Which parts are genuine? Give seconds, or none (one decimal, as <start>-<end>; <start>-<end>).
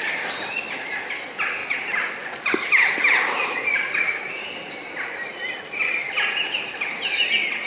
0.0-1.6; 5.6-7.7